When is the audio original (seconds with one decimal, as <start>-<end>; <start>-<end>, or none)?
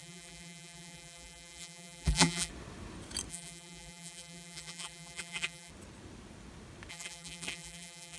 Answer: 2.5-3.3; 5.7-6.9